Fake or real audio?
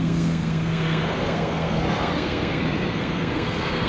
fake